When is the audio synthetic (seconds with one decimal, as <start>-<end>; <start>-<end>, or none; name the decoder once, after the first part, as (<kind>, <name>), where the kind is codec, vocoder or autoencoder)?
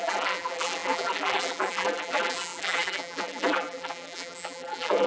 0.0-5.1 (vocoder, BigVGAN v2)